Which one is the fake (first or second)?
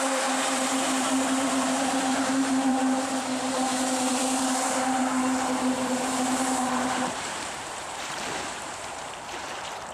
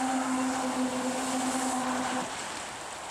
first